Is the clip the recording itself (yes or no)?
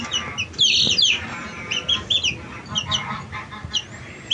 yes